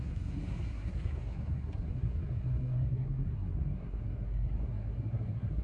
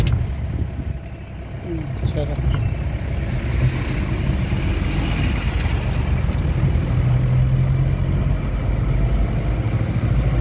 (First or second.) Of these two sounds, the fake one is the first